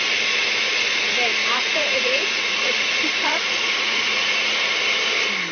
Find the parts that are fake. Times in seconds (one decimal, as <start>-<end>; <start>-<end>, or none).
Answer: 1.4-4.7